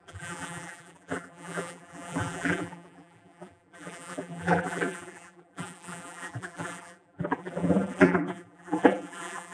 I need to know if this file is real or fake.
fake